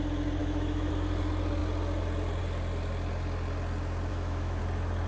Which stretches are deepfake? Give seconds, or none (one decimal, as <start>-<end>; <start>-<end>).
0.4-0.9; 4.1-4.6

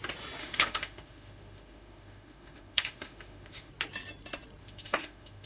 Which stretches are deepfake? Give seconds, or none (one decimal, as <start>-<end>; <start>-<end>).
0.4-3.7; 4.6-5.5

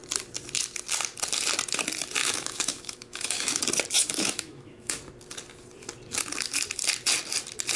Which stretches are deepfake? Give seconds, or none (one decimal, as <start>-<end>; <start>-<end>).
2.2-3.6; 4.0-5.0